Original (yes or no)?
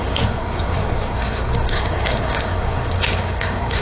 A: no